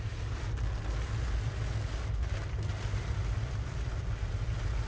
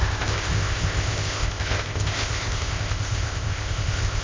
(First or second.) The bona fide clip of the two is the first